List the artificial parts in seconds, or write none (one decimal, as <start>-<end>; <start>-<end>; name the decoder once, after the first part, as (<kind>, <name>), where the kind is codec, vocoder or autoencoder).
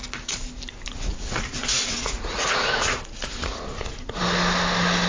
1.1-4.2 (vocoder, Vocos)